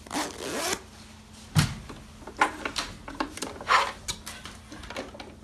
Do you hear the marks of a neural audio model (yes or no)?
no